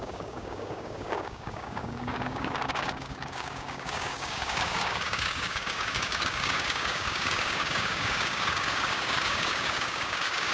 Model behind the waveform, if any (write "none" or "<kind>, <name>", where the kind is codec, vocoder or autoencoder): codec, DAC